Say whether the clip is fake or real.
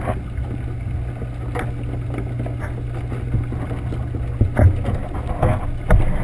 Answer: real